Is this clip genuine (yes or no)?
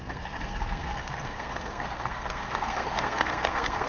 no